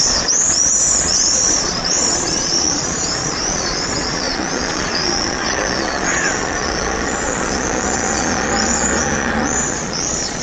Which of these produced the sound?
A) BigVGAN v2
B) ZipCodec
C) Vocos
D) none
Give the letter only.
C